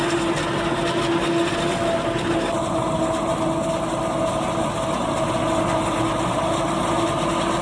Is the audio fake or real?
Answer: real